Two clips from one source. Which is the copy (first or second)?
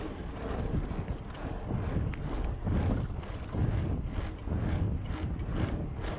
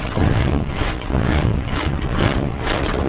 second